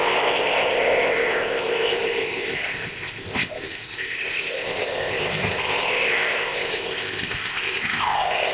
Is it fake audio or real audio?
fake